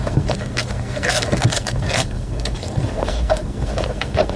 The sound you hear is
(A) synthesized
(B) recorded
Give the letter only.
A